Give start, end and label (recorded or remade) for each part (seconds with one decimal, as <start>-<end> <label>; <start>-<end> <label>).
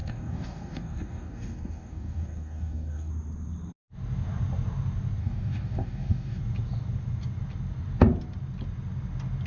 0.0-3.1 remade; 3.1-5.2 recorded; 5.2-6.4 remade; 6.4-9.5 recorded